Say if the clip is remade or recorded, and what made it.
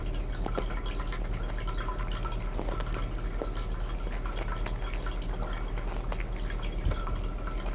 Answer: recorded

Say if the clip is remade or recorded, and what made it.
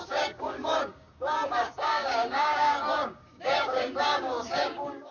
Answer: remade, codec, DAC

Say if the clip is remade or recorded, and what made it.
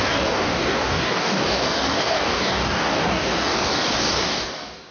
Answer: remade, codec, DAC